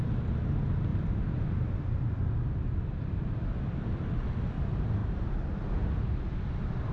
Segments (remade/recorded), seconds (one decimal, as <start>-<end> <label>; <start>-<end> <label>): 0.0-0.9 recorded; 0.9-4.6 remade; 4.6-5.0 recorded; 5.0-5.6 remade; 5.6-6.9 recorded

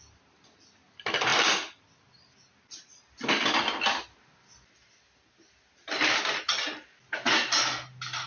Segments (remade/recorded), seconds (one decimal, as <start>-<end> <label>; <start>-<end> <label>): 0.0-8.3 recorded

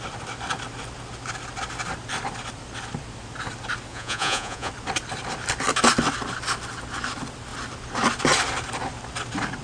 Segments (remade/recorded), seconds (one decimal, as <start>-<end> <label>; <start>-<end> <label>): 0.0-3.9 recorded; 3.9-4.7 remade; 4.7-9.6 recorded

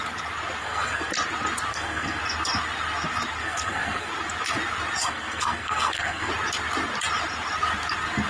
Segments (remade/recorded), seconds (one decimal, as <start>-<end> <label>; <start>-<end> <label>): 0.0-0.6 recorded; 0.6-1.1 remade; 1.1-1.7 recorded; 1.7-2.2 remade; 2.2-3.4 recorded; 3.4-4.1 remade; 4.1-5.0 recorded; 5.0-6.3 remade; 6.3-8.3 recorded

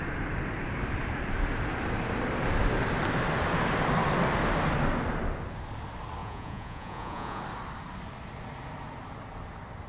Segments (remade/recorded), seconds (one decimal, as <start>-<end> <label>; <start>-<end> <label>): 0.0-6.2 recorded; 6.2-7.4 remade; 7.4-9.9 recorded

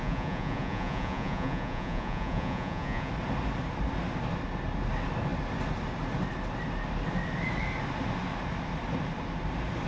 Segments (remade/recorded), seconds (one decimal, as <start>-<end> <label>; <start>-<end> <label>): 0.0-3.1 remade; 3.1-9.9 recorded

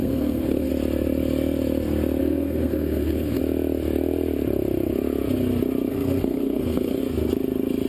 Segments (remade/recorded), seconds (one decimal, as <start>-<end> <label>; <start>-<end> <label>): 0.0-0.7 remade; 0.7-2.2 recorded; 2.2-3.4 remade; 3.4-5.9 recorded; 5.9-7.0 remade; 7.0-7.9 recorded